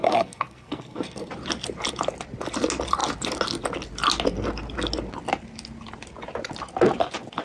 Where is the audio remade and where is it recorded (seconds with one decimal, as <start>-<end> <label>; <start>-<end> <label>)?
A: 0.0-1.3 remade; 1.3-7.4 recorded